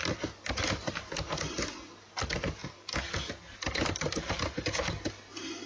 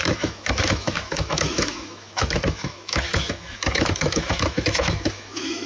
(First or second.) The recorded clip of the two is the first